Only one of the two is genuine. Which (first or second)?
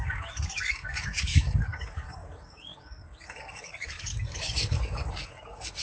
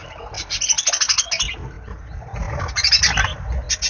second